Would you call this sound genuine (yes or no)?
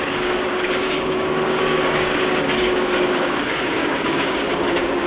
no